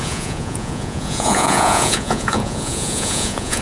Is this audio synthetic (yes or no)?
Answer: yes